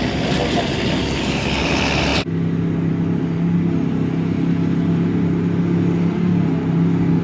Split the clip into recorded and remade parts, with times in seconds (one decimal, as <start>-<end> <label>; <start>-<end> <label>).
0.0-1.0 recorded; 1.0-1.7 remade; 1.7-7.2 recorded